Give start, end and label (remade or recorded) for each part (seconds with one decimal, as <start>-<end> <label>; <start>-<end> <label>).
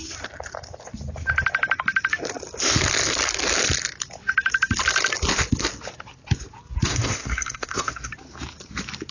0.0-6.9 recorded; 6.9-8.1 remade; 8.1-9.1 recorded